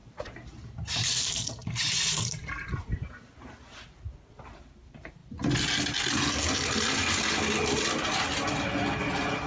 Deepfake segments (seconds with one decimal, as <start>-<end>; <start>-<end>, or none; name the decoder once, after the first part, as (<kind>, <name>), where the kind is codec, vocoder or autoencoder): 0.0-4.6 (vocoder, BigVGAN v2)